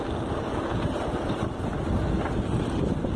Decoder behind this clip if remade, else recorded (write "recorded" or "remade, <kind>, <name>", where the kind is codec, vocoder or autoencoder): recorded